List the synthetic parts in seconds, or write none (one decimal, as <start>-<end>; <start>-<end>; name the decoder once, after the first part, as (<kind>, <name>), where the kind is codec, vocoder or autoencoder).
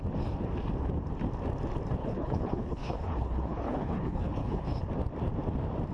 2.0-4.8 (codec, HILCodec)